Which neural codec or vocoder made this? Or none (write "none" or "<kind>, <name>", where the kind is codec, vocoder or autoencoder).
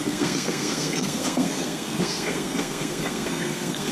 codec, SNAC